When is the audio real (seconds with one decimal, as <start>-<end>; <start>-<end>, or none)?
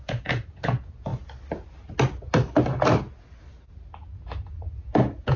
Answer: 1.1-4.3